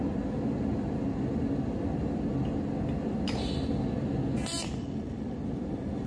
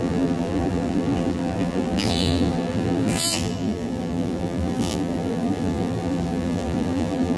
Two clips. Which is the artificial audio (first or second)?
second